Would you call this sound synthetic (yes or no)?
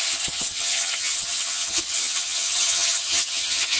yes